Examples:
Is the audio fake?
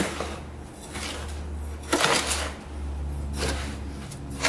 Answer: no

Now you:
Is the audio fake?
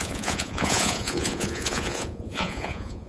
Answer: yes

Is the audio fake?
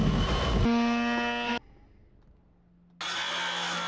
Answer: no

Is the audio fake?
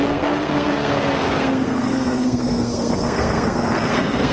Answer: yes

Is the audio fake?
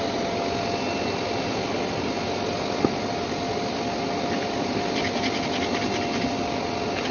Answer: no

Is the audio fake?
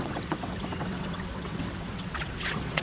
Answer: yes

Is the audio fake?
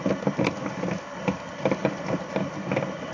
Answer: no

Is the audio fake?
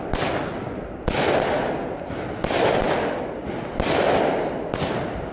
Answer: no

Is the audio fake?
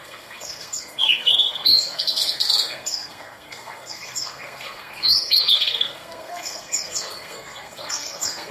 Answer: yes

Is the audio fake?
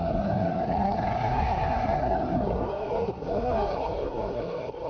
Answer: yes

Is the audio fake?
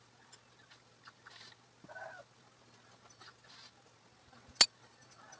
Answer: no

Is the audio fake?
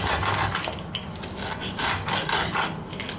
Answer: no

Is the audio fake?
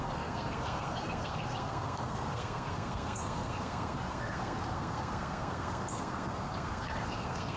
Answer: yes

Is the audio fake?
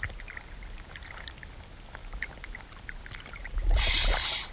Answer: no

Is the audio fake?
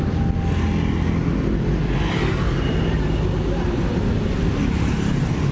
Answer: no